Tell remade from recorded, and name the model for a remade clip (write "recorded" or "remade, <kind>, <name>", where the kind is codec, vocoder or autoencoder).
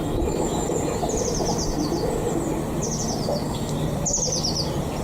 recorded